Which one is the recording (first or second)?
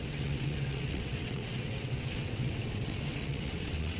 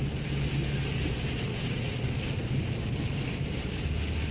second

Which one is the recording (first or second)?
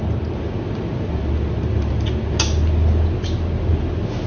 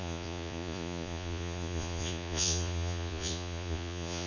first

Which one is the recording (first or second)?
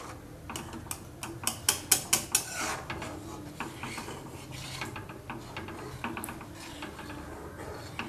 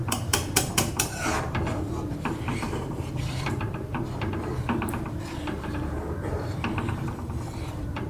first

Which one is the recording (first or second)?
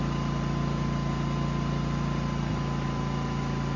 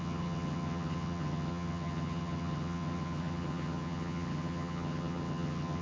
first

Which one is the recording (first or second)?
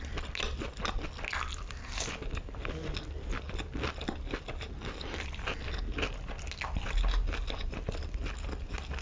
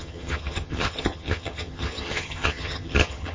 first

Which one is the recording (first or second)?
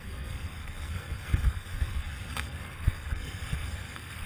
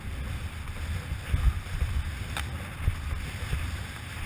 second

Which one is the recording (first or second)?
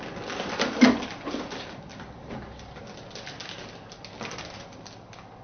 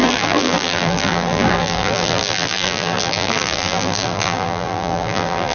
first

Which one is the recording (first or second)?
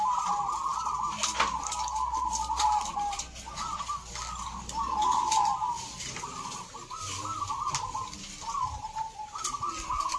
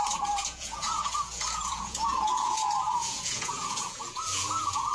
first